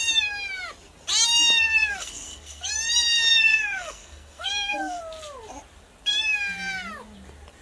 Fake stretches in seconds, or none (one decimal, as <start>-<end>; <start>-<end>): 1.9-2.7; 3.5-5.0